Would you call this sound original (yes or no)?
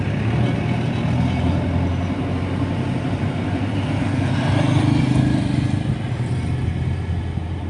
yes